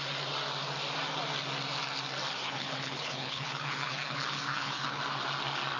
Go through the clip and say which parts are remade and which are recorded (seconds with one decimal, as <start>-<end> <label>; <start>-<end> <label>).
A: 0.0-2.4 recorded; 2.4-5.0 remade; 5.0-5.8 recorded